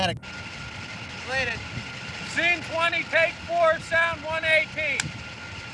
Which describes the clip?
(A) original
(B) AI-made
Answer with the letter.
A